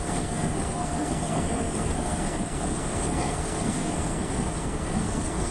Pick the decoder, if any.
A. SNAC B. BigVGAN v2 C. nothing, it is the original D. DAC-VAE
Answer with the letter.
A